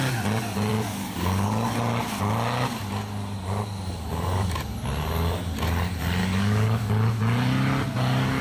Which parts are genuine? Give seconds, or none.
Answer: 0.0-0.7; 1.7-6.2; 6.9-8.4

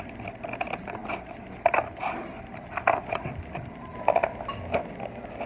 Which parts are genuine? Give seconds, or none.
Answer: 0.0-5.5